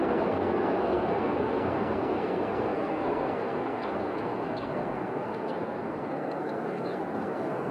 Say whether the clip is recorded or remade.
remade